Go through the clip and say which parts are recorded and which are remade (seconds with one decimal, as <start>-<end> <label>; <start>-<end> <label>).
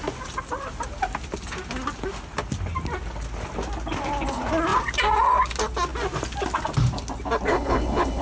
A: 0.0-7.5 recorded; 7.5-8.2 remade